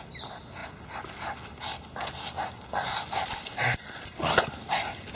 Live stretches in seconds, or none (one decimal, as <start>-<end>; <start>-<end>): 0.0-5.2